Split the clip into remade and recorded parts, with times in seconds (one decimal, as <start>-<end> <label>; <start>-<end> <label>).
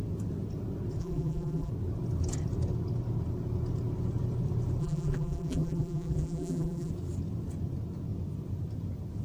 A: 0.0-1.0 recorded; 1.0-1.7 remade; 1.7-4.8 recorded; 4.8-6.9 remade; 6.9-9.2 recorded